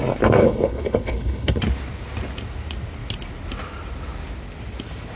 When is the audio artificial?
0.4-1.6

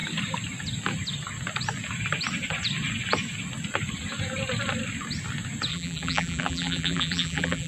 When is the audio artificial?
5.7-7.7